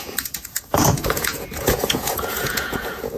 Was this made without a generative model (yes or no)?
no